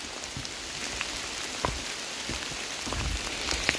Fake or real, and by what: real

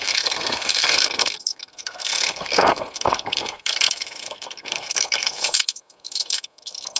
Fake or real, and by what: fake, codec, SNAC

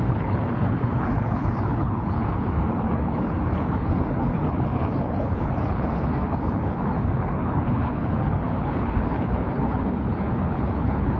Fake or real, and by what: fake, codec, HILCodec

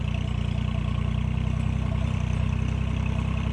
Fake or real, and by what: real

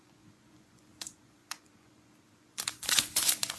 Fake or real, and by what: fake, vocoder, Vocos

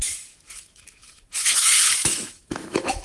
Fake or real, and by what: fake, autoencoder, DAC-VAE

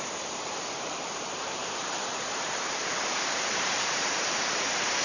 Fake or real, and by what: fake, vocoder, BigVGAN v2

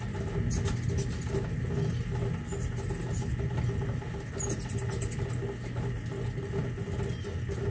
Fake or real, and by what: real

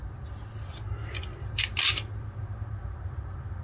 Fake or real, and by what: real